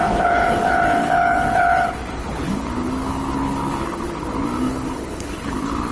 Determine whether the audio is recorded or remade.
remade